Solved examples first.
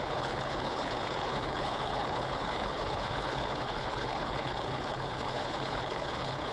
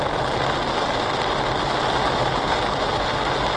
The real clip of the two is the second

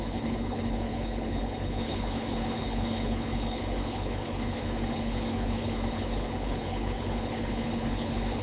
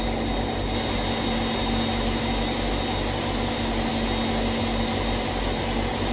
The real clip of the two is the second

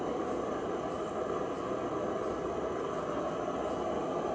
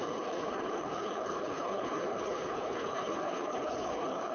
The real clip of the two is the first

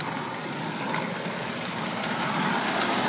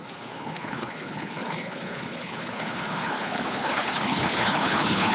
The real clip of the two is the first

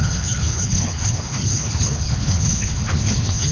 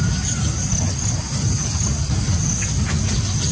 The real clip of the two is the second